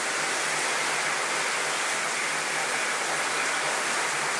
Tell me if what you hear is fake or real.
real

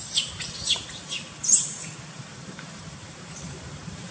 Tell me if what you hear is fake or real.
fake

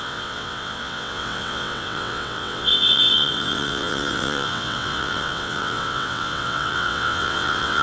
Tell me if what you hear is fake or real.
fake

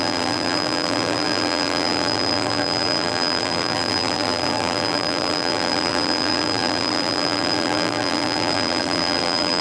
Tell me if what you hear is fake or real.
fake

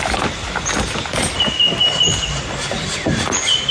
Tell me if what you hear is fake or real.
real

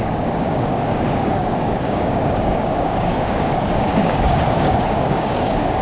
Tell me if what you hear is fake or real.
fake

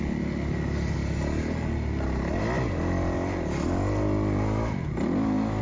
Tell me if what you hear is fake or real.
real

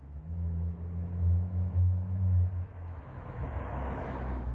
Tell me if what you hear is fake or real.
fake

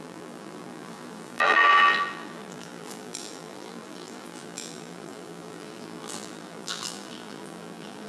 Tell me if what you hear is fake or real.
fake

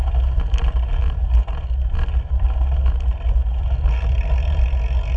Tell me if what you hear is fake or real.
real